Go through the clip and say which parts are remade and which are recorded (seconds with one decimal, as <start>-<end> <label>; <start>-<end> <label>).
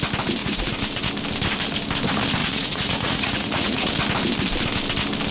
0.0-0.4 recorded; 0.4-1.1 remade; 1.1-2.4 recorded; 2.4-3.9 remade; 3.9-5.3 recorded